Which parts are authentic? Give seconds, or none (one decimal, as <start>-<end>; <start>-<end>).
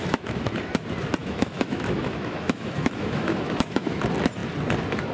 0.7-1.2; 4.0-5.1